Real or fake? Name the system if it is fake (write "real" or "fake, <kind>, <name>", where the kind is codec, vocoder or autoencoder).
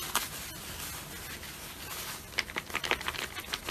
real